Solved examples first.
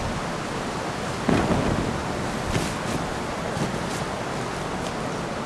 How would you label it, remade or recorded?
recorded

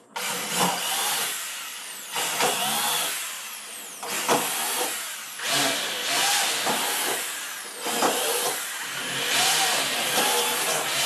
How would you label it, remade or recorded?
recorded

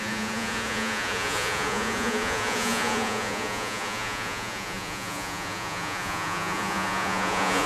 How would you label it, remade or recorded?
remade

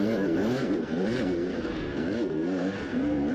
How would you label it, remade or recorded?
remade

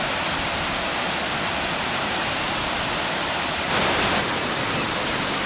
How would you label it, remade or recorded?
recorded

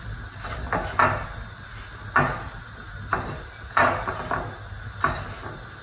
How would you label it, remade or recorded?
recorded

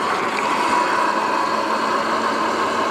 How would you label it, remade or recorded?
recorded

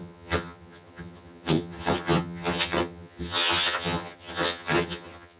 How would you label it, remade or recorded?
remade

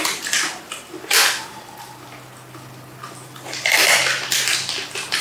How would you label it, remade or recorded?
recorded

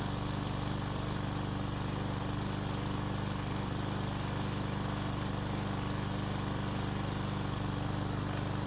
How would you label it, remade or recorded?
recorded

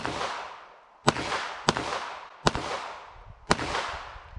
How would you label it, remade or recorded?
recorded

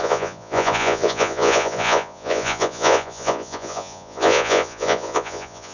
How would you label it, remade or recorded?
remade